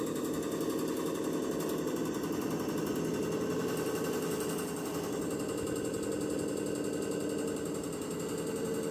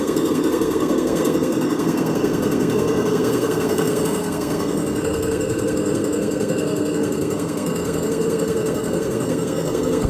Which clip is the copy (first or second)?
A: second